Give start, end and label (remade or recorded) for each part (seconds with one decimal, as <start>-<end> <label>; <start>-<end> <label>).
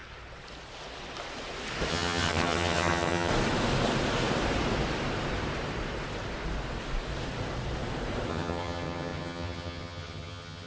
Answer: 0.0-1.9 recorded; 1.9-3.3 remade; 3.3-8.3 recorded; 8.3-10.7 remade